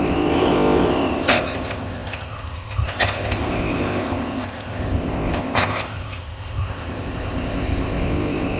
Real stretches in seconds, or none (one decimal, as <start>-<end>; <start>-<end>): none